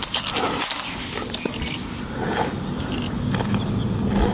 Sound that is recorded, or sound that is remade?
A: recorded